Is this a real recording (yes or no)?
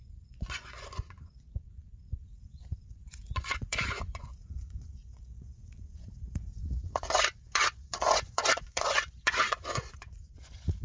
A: no